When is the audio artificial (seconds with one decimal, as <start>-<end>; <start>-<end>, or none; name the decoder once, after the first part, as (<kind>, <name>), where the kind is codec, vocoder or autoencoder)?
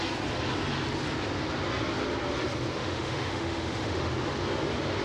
2.7-4.1 (autoencoder, DAC-VAE)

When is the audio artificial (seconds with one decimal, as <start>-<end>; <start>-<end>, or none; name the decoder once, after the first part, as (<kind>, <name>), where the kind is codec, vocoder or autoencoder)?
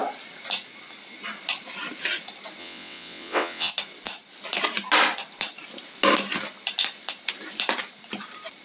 2.6-3.7 (vocoder, WaveNeXt)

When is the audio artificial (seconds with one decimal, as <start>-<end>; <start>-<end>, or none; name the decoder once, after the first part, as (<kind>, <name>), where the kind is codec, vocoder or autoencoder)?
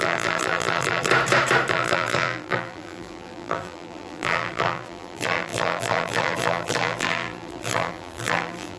0.0-1.1 (vocoder, BigVGAN v2); 1.7-8.8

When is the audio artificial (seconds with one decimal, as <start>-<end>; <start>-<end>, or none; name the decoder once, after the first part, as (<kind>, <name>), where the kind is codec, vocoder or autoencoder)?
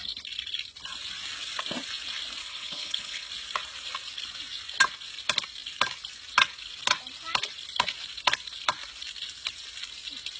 2.4-3.3 (codec, HILCodec)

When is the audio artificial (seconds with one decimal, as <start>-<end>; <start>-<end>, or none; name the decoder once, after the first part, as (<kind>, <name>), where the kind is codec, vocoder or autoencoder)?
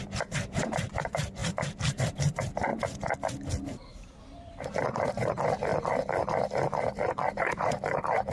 0.0-2.7 (vocoder, BigVGAN v2); 3.9-5.7; 7.3-8.3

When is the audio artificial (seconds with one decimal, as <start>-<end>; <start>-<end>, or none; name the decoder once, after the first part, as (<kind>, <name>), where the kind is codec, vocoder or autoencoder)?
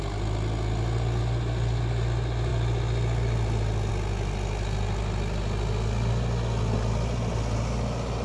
none